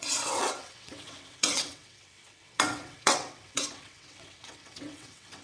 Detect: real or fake fake